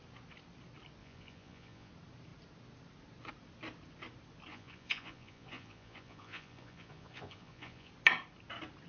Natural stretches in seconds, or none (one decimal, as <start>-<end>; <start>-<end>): 0.0-1.0; 1.9-4.5; 7.9-8.9